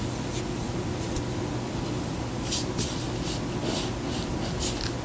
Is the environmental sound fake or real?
real